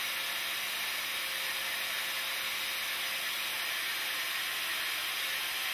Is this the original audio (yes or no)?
yes